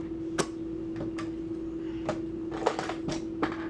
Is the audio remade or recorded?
recorded